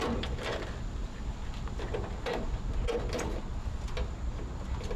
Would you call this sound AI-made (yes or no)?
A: no